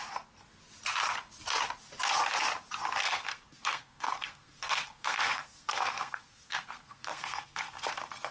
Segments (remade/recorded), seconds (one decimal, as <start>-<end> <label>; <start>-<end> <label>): 0.0-3.0 recorded; 3.0-7.9 remade; 7.9-8.3 recorded